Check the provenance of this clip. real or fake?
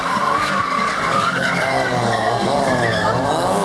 fake